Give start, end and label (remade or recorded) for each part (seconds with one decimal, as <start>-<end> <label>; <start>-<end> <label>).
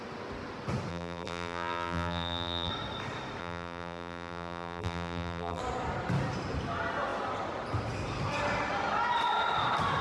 0.0-0.9 recorded; 0.9-2.7 remade; 2.7-3.4 recorded; 3.4-5.6 remade; 5.6-10.0 recorded